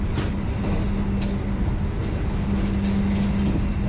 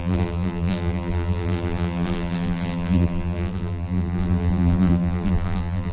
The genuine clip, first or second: first